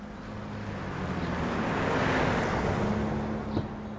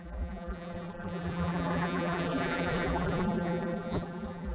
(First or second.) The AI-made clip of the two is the second